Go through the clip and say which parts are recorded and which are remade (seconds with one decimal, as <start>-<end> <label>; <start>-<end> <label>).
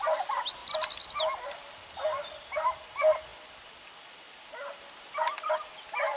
0.0-6.2 recorded